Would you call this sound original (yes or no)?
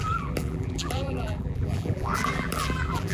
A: no